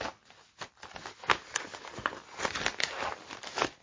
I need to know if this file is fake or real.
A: real